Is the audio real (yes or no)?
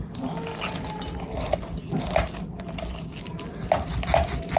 yes